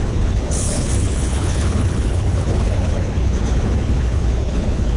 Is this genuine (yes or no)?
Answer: no